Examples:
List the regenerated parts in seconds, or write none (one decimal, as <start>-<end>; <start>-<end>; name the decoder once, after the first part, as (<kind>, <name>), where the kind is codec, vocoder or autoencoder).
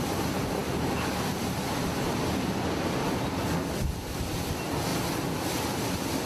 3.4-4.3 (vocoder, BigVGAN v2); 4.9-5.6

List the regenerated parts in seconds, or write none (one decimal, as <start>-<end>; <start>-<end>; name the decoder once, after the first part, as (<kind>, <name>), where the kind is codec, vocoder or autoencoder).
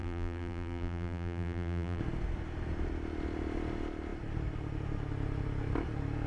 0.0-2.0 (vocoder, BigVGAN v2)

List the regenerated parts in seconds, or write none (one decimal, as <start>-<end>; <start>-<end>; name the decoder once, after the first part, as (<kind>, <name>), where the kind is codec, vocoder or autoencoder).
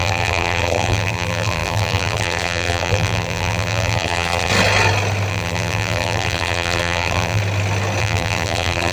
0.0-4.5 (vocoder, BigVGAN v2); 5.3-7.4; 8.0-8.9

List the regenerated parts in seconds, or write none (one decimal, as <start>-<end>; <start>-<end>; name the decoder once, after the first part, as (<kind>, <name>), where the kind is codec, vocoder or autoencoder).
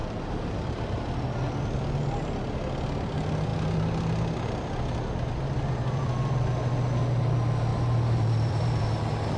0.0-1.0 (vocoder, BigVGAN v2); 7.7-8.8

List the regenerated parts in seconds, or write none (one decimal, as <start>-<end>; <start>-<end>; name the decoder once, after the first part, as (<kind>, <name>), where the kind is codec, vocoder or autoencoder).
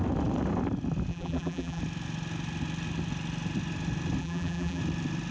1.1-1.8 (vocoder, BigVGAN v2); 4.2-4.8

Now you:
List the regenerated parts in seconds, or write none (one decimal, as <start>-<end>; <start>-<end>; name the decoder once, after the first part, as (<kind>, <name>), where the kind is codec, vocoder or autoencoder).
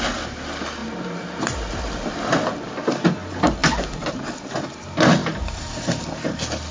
5.2-6.0 (vocoder, BigVGAN v2)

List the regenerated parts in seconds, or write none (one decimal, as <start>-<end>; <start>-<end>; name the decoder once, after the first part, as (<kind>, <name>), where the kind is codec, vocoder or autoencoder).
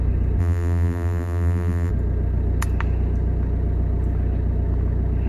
0.4-1.9 (vocoder, BigVGAN v2)